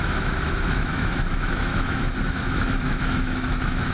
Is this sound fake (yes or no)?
yes